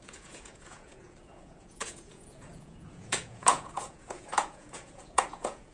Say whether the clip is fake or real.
fake